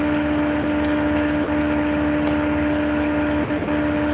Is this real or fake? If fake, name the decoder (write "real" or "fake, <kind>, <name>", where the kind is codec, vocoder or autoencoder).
real